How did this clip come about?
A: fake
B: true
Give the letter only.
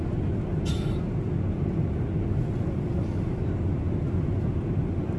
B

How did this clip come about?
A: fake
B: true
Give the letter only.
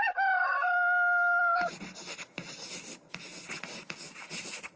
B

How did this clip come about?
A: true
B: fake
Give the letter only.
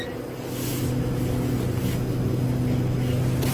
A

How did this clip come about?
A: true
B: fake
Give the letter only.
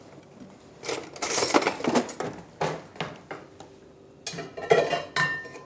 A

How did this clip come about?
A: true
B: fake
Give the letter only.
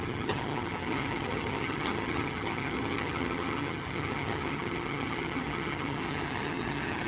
B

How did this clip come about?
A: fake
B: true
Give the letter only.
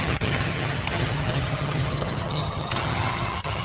A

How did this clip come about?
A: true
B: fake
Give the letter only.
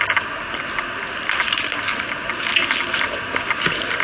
A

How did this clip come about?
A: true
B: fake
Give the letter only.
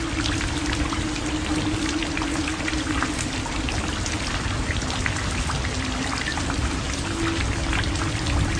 A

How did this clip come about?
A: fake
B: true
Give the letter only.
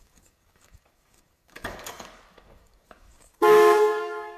A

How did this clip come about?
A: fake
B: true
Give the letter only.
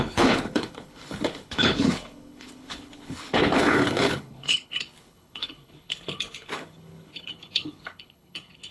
A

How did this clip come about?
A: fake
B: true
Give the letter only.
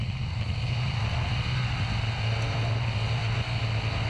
B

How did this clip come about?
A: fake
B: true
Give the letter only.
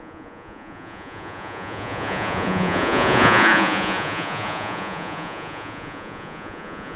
A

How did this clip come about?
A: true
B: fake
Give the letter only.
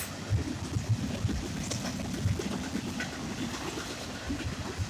A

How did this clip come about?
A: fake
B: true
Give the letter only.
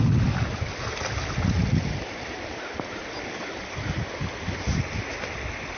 B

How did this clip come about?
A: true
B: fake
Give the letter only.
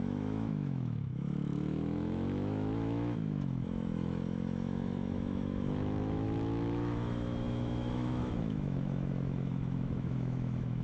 B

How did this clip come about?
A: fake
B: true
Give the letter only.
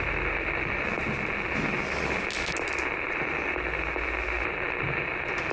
B